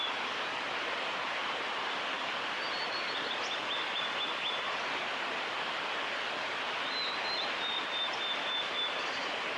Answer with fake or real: real